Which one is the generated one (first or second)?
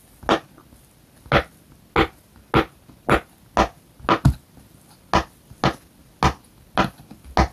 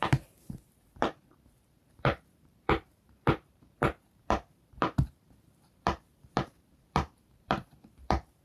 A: second